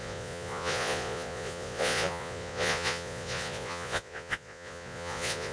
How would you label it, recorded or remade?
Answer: remade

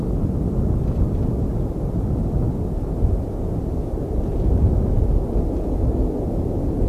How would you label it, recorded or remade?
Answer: recorded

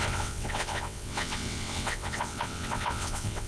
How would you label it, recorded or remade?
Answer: remade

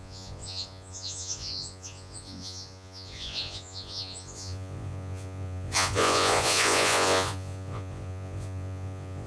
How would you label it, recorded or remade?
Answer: remade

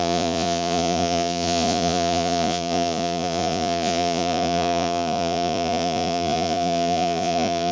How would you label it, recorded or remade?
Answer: remade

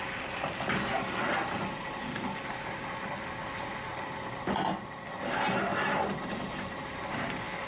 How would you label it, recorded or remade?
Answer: recorded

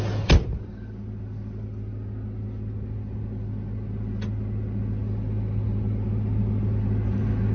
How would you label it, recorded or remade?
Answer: recorded